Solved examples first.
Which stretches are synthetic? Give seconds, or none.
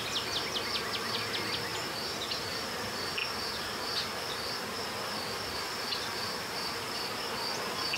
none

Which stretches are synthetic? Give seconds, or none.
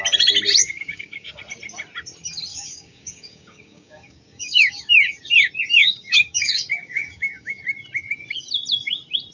0.6-1.4 (codec, DAC); 2.5-4.9; 5.8-7.6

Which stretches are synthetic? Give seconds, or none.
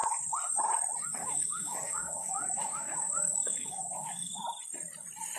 1.2-4.4 (codec, DAC)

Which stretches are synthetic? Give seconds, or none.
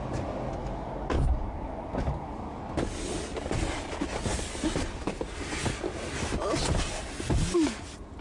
0.6-2.6 (codec, DAC)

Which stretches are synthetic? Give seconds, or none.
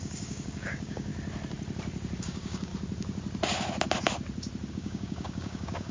0.0-1.1 (codec, DAC); 2.2-2.7; 4.7-5.9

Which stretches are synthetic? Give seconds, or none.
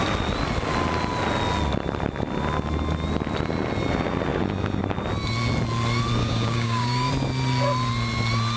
6.2-7.1 (codec, DAC)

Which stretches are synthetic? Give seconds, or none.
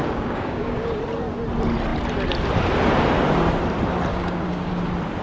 0.0-1.0 (codec, DAC); 4.1-4.7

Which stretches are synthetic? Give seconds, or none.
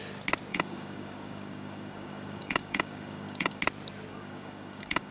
0.5-3.6 (codec, DAC); 4.1-5.1